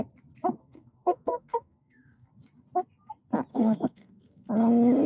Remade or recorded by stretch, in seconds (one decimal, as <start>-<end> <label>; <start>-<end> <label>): 0.0-0.6 recorded; 0.6-2.3 remade; 2.3-3.5 recorded; 3.5-4.5 remade; 4.5-5.1 recorded

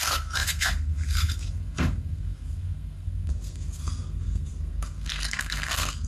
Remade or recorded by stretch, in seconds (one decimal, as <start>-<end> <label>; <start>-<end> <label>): 0.0-6.1 remade